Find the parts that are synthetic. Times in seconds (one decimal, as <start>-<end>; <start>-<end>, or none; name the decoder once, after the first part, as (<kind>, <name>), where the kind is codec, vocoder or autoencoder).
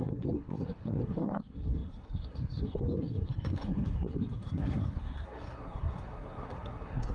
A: 0.0-7.1 (codec, SNAC)